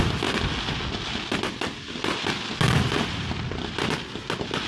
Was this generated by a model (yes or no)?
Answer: no